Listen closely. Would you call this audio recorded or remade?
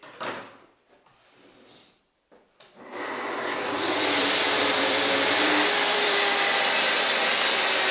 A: remade